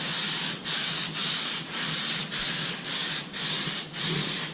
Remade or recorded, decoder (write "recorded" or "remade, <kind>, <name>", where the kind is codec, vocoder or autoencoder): recorded